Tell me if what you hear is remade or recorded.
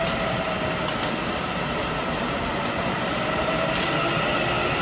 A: recorded